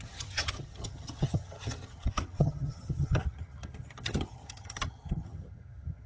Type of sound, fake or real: fake